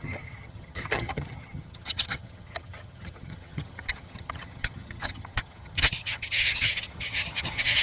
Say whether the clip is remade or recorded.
remade